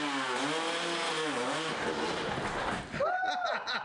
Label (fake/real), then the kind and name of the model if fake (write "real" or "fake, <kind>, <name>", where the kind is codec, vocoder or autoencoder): real